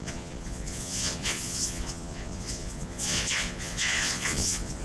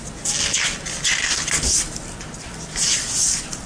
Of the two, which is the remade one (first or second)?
first